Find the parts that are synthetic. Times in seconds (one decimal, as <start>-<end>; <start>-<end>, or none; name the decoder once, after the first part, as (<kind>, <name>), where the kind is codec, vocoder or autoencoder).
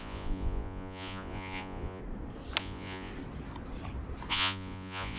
0.0-2.0 (vocoder, Vocos); 2.6-3.1; 4.3-5.2